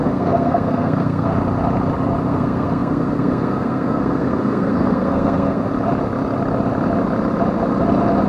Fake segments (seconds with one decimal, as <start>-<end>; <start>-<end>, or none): 0.0-1.3; 2.3-5.7